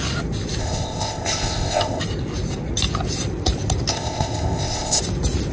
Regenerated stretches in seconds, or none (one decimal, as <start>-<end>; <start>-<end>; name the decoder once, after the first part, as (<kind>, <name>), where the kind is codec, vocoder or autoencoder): 0.6-2.0 (codec, ZipCodec); 3.9-5.0